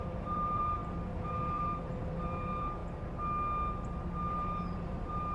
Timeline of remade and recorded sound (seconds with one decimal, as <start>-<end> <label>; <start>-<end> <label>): 0.0-2.8 remade; 2.8-4.3 recorded; 4.3-5.3 remade